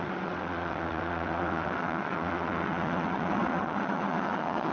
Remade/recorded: remade